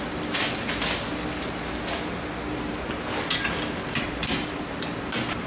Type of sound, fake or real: real